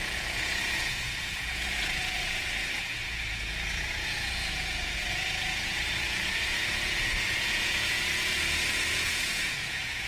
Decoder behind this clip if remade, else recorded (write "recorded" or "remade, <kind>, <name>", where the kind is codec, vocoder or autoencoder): remade, vocoder, Vocos